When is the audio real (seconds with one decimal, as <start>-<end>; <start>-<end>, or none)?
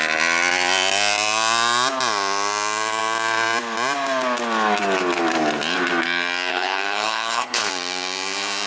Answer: 0.0-6.5; 7.7-8.7